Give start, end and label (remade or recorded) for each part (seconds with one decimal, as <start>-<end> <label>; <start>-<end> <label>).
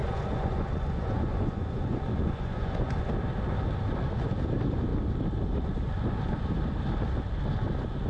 0.0-3.1 remade; 3.1-8.1 recorded